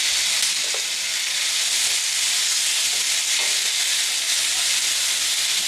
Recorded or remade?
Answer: recorded